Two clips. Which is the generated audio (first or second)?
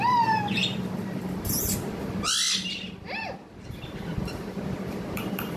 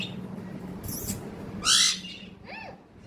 first